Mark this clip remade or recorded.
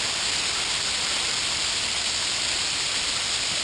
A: recorded